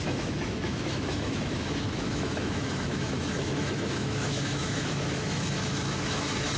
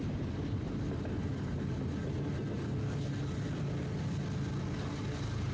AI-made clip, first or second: first